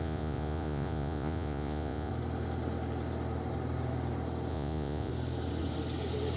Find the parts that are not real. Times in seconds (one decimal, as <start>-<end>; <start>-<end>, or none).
0.0-2.1; 4.5-5.1